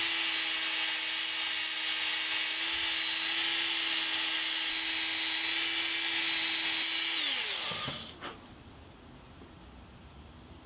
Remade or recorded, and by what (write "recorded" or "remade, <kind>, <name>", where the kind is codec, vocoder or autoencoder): recorded